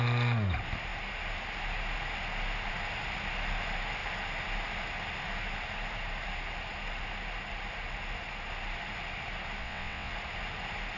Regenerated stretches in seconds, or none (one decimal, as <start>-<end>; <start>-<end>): 9.6-10.1